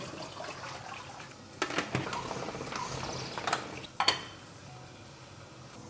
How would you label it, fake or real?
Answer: real